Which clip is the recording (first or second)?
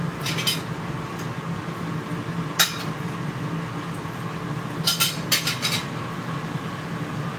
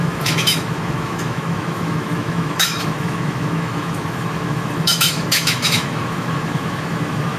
first